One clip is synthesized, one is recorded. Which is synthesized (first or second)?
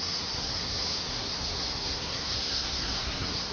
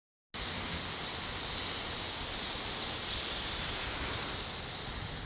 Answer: first